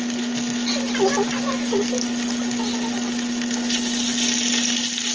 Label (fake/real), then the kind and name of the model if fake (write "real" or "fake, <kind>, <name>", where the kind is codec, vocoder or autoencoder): real